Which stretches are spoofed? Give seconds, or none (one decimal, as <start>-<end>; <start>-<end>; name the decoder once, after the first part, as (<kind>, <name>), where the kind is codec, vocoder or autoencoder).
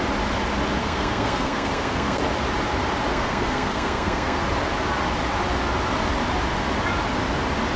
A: 0.8-2.2 (codec, SNAC); 3.1-4.4